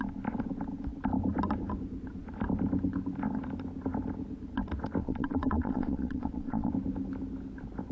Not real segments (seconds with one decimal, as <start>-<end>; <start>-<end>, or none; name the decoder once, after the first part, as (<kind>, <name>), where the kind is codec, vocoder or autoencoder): 5.0-6.7 (vocoder, Vocos)